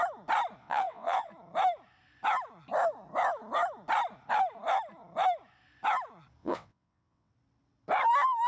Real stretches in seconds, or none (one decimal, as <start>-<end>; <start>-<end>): 0.0-0.6; 1.3-6.4; 7.3-8.5